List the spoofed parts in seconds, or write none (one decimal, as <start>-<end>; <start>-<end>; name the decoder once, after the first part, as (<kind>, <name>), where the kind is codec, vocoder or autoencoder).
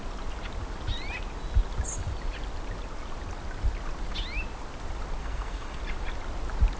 5.2-5.8 (codec, SNAC)